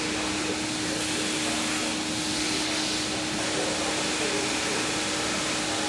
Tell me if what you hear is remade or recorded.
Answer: recorded